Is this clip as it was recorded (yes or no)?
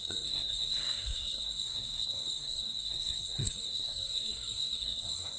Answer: no